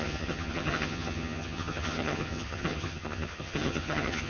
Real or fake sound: fake